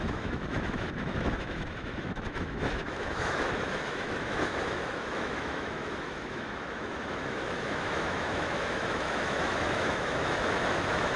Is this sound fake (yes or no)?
yes